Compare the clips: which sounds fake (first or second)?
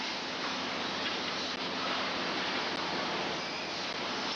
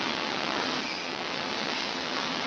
second